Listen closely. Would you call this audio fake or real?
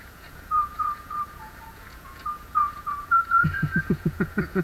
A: fake